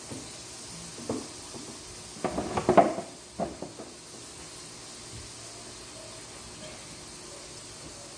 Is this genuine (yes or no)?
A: yes